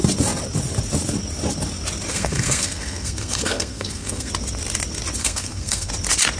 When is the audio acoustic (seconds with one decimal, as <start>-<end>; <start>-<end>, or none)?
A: 0.0-2.1; 4.3-5.2; 5.9-6.4